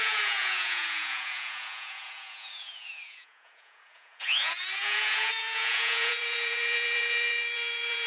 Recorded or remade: remade